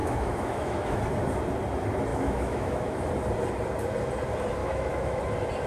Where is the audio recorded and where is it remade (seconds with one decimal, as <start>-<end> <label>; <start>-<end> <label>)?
0.0-1.0 remade; 1.0-2.1 recorded; 2.1-3.1 remade; 3.1-4.6 recorded; 4.6-5.2 remade; 5.2-5.7 recorded